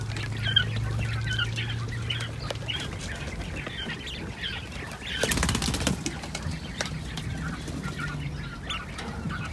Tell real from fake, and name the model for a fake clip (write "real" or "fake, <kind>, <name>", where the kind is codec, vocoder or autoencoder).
real